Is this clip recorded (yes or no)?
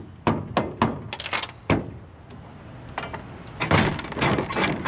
yes